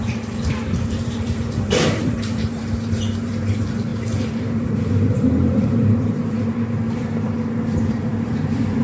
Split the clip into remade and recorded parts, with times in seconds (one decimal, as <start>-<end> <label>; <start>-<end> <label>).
0.0-8.8 remade